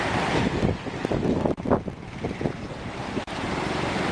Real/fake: real